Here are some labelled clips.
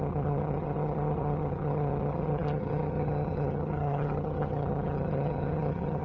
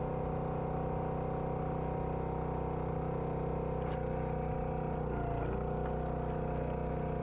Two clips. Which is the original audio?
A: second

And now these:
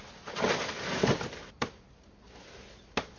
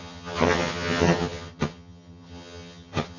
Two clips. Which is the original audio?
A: first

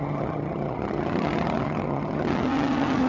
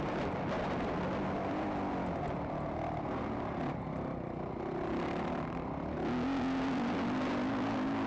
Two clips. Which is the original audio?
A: second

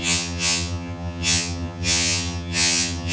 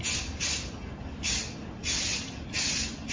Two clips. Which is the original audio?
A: second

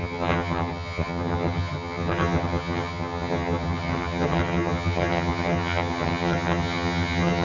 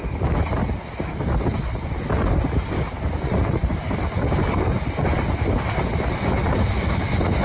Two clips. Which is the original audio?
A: second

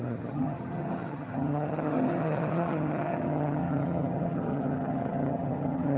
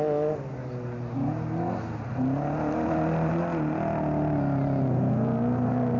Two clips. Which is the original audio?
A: second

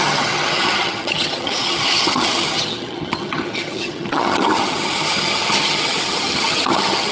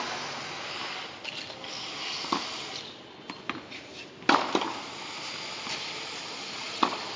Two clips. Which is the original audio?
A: second